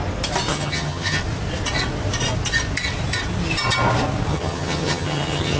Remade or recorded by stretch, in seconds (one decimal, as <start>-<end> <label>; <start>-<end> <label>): 0.0-0.5 recorded; 0.5-1.2 remade; 1.2-4.3 recorded; 4.3-5.6 remade